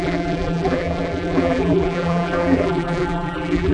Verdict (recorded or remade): remade